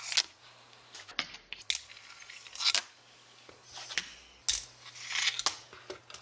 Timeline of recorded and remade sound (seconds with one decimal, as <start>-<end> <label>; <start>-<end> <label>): 0.0-2.8 recorded; 2.8-3.5 remade; 3.5-6.2 recorded